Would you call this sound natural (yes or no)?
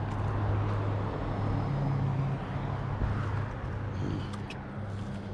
yes